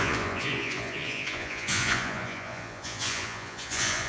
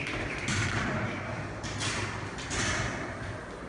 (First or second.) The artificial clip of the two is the first